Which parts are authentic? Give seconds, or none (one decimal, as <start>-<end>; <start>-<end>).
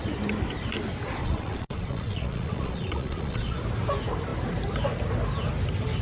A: 0.0-1.2; 3.6-6.0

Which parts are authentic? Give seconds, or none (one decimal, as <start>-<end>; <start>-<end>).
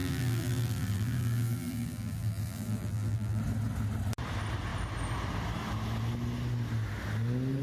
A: 3.4-7.6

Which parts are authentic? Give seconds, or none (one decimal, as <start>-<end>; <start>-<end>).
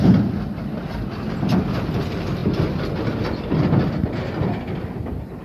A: 0.0-5.4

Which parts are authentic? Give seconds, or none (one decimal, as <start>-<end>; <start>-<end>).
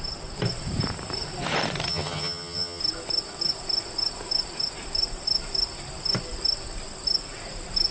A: 0.0-1.9; 2.8-7.9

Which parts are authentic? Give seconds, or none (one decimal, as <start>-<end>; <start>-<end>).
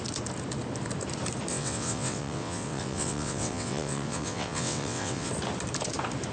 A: 0.0-1.5; 5.3-6.3